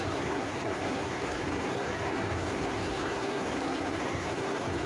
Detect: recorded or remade remade